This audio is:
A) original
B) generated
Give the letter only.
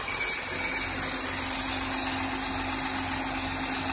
A